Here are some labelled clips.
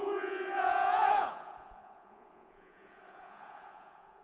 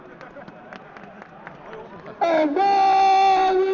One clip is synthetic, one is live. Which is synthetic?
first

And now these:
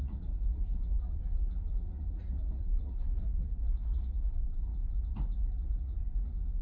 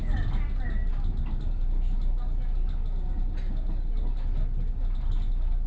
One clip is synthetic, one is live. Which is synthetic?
first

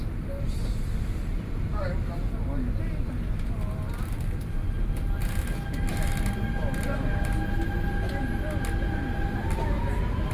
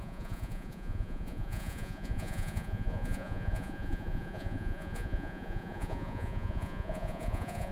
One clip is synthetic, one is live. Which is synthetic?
second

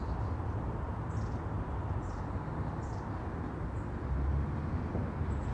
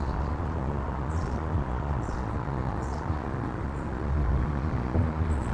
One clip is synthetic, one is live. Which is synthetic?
second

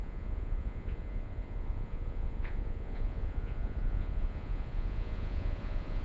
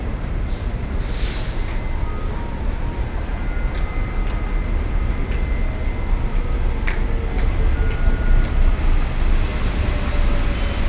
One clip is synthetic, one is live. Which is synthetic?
first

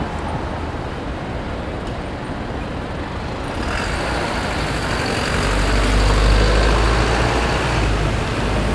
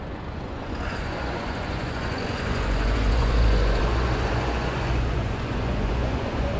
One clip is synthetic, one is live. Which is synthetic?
second